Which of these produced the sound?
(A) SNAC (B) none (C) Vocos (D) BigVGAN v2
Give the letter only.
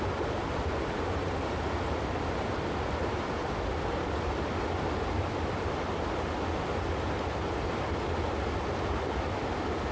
B